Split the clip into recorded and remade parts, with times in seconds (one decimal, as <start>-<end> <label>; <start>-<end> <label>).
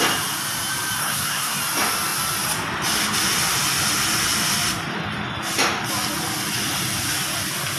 0.0-1.0 recorded; 1.0-1.6 remade; 1.6-7.8 recorded